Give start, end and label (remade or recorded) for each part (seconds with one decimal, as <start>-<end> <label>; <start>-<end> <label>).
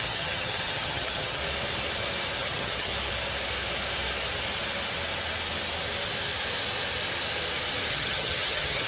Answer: 0.0-1.4 remade; 1.4-2.4 recorded; 2.4-2.9 remade; 2.9-7.9 recorded; 7.9-8.9 remade